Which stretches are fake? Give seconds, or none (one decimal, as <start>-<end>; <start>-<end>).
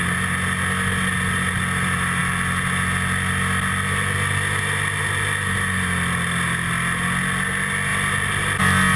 none